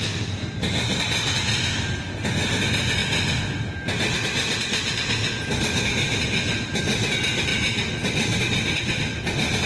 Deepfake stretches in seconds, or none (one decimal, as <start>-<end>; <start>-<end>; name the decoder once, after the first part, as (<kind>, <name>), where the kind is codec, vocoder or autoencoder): none